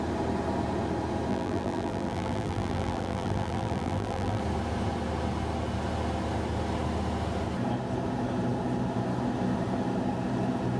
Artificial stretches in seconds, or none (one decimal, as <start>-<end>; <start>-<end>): 1.3-4.4